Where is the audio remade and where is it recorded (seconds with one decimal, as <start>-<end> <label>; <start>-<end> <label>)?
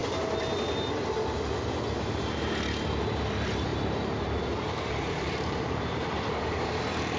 0.0-3.7 recorded; 3.7-6.2 remade; 6.2-7.2 recorded